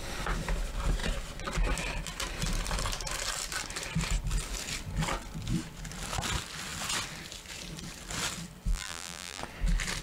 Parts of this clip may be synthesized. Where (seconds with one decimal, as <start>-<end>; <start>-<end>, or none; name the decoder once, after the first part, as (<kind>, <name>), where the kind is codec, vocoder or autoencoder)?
8.7-9.4 (vocoder, BigVGAN v2)